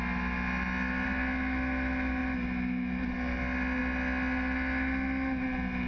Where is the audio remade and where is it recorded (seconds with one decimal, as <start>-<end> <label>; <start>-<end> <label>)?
0.0-5.9 recorded